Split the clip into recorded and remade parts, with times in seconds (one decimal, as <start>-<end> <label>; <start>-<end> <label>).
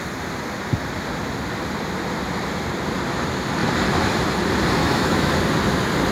0.0-4.8 recorded; 4.8-5.3 remade; 5.3-6.1 recorded